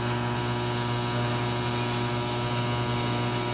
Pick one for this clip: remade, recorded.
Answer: recorded